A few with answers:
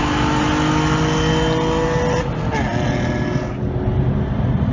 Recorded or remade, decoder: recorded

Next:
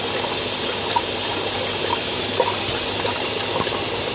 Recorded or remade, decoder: recorded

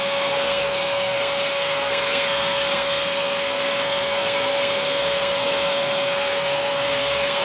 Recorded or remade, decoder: remade, codec, SNAC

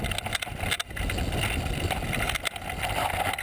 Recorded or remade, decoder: recorded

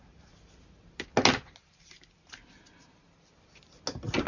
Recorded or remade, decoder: recorded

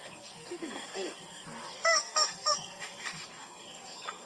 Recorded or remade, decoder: remade, codec, SNAC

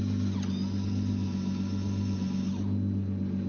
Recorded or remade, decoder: recorded